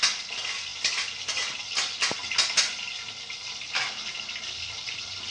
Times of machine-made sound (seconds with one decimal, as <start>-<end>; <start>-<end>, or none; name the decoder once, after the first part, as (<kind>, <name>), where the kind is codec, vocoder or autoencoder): none